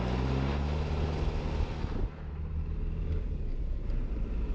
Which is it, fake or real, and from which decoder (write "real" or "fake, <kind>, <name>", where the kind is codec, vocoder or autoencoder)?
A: real